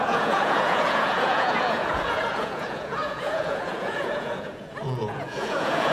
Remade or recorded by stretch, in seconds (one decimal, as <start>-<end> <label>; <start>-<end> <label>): 0.0-5.9 remade